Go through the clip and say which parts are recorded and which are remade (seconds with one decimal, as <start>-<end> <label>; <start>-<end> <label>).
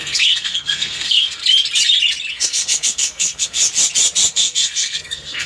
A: 0.0-1.4 remade; 1.4-2.3 recorded; 2.3-3.6 remade; 3.6-4.3 recorded; 4.3-5.5 remade